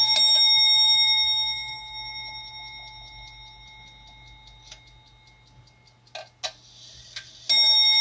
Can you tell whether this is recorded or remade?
recorded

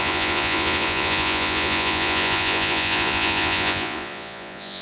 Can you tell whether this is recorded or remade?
remade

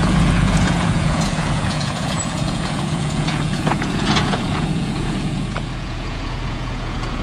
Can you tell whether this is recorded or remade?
remade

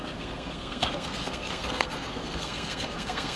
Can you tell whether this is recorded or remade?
remade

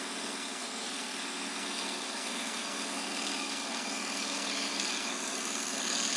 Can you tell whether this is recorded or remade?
remade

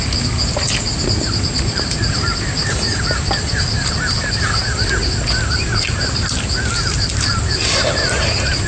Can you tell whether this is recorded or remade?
recorded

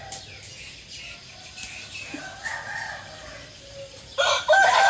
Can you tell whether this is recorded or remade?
recorded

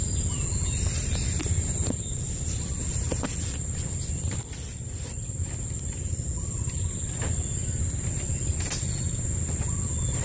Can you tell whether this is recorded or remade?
recorded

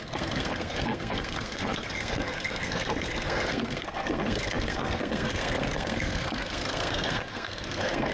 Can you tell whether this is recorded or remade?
remade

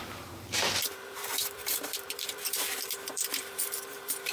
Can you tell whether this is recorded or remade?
remade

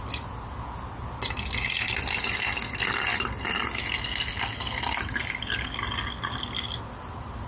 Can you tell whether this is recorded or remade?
recorded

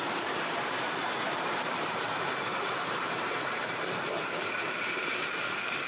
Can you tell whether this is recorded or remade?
remade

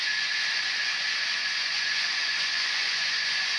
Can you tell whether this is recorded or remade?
remade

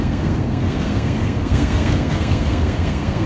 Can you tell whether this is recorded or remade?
remade